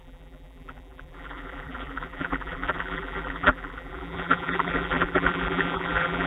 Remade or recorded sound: remade